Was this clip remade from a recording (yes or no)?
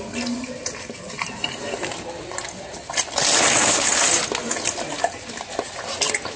no